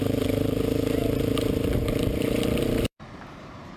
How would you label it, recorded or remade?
remade